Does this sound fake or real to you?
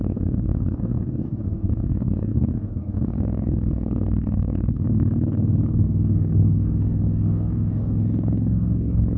fake